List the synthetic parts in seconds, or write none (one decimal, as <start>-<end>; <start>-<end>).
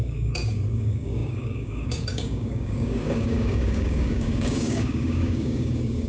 0.0-6.1